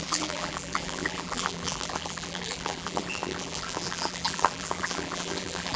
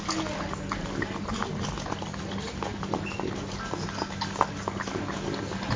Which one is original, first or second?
second